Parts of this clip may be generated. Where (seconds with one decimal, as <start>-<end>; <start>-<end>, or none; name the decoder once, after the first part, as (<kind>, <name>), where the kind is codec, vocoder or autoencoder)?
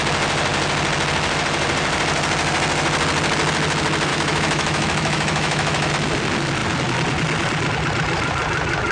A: 4.1-5.9 (autoencoder, DAC-VAE)